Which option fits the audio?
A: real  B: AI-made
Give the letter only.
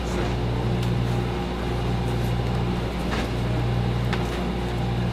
A